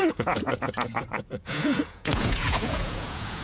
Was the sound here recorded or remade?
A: remade